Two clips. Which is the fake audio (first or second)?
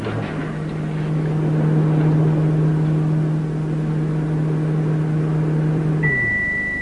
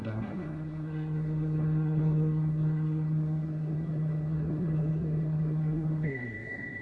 second